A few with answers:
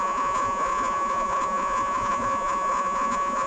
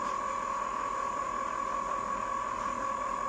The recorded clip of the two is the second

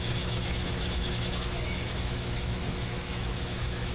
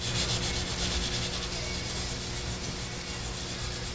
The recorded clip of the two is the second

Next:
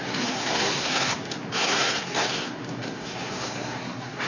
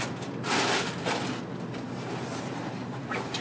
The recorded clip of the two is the second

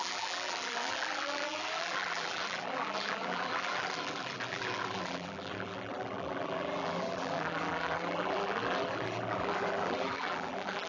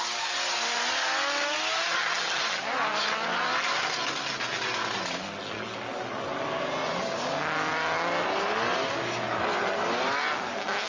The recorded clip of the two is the second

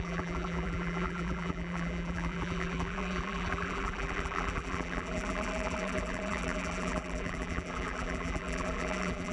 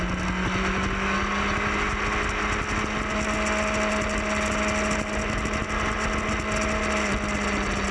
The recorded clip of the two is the second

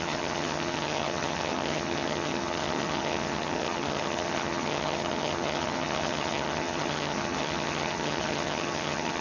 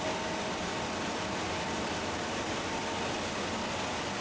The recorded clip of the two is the second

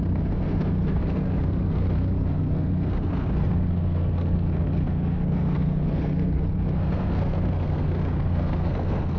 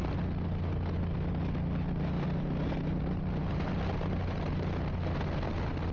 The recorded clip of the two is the second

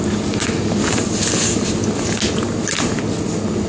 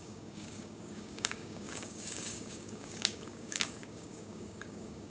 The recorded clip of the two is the first